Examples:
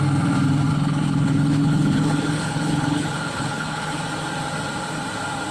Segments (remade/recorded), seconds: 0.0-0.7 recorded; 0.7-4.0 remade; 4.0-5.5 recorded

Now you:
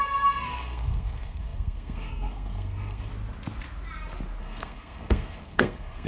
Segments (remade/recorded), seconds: 0.0-3.1 remade; 3.1-4.4 recorded; 4.4-6.1 remade

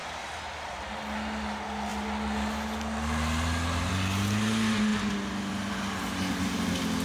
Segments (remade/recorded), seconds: 0.0-0.9 remade; 0.9-7.0 recorded

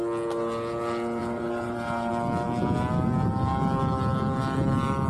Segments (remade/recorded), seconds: 0.0-1.2 recorded; 1.2-2.1 remade; 2.1-5.1 recorded

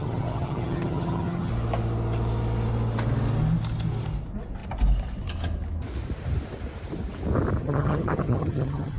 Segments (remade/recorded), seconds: 0.0-1.5 remade; 1.5-7.6 recorded; 7.6-9.0 remade